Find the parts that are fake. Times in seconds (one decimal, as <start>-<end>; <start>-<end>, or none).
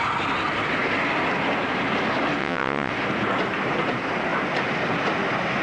2.4-2.9